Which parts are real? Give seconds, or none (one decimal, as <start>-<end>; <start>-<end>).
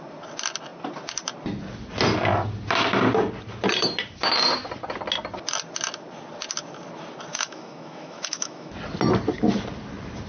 0.0-7.3; 8.7-10.3